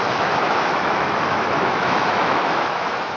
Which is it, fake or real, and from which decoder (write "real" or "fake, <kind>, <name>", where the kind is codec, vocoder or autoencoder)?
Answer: fake, autoencoder, DAC-VAE